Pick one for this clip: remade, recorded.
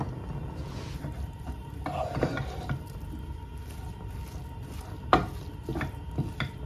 recorded